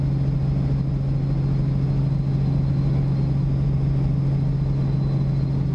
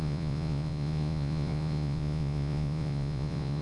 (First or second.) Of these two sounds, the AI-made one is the second